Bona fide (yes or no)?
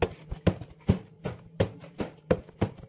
yes